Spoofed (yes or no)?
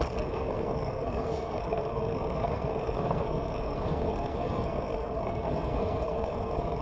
yes